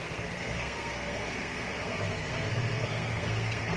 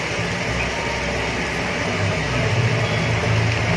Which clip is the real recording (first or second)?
second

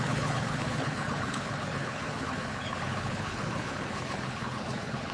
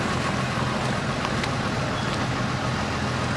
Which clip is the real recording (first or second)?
second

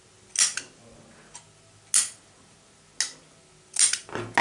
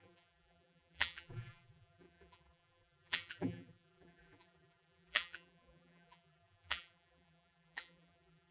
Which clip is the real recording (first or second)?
first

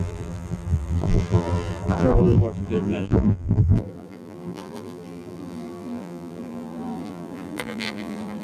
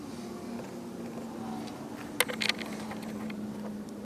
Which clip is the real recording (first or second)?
second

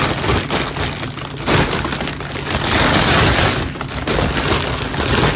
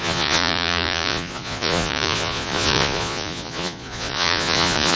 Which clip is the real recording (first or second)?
first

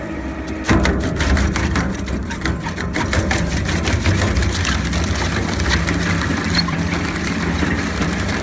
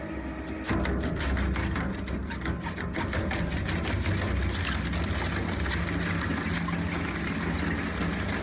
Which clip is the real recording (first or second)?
second